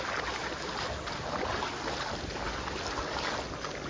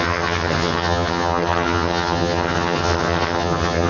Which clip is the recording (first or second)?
first